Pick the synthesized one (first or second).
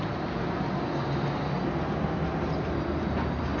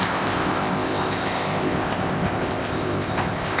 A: second